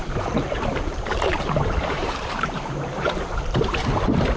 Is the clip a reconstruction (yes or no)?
yes